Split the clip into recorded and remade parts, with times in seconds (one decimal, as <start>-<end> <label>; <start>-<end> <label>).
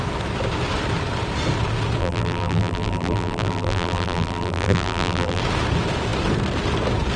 0.0-2.0 recorded; 2.0-5.4 remade; 5.4-7.2 recorded